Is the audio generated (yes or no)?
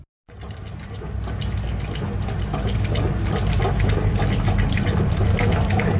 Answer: no